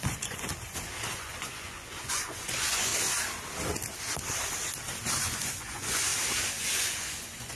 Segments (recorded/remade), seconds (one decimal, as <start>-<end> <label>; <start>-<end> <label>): 0.0-0.5 remade; 0.5-1.1 recorded; 1.1-2.9 remade; 2.9-5.2 recorded; 5.2-6.1 remade; 6.1-6.6 recorded; 6.6-7.6 remade